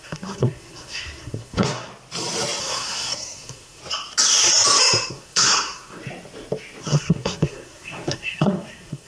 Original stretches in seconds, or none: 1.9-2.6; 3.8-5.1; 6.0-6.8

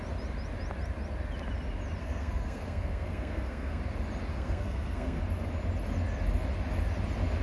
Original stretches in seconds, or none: 0.0-2.0; 3.8-4.3; 5.2-7.4

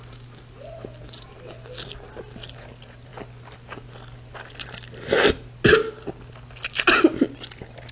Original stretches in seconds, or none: 0.0-7.9

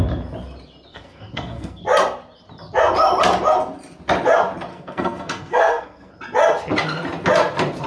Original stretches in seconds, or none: 0.0-0.9; 1.8-4.7; 6.1-7.9

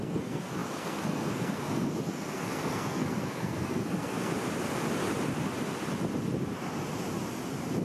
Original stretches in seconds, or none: 4.3-7.8

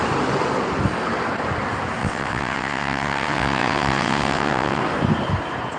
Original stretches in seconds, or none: 0.0-2.0; 4.8-5.8

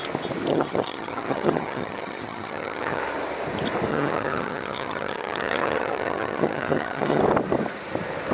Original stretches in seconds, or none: 0.0-0.5; 3.0-3.9; 7.2-8.3

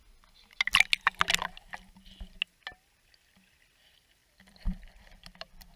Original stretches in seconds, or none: 0.0-4.2